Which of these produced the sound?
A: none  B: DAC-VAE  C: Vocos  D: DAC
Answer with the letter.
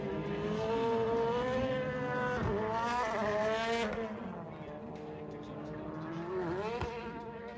A